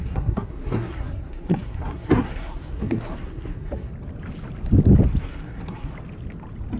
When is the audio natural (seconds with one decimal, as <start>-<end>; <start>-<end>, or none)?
3.9-5.2; 5.9-6.8